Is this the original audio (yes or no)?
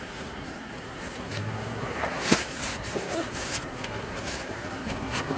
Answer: no